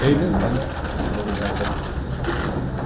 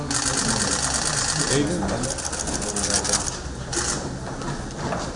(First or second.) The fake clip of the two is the first